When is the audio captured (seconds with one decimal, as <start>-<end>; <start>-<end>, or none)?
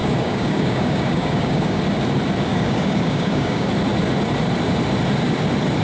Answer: 1.8-2.5; 3.7-5.8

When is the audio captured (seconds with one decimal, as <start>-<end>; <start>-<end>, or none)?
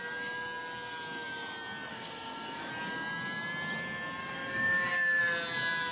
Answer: 0.0-1.9; 2.7-4.2; 5.2-5.9